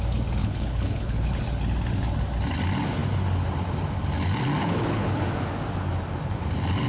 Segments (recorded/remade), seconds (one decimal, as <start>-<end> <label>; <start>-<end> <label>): 0.0-0.4 recorded; 0.4-1.4 remade; 1.4-4.6 recorded; 4.6-5.2 remade; 5.2-6.9 recorded